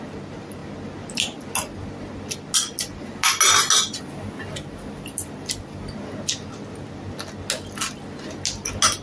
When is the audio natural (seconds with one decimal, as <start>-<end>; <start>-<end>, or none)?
0.0-9.0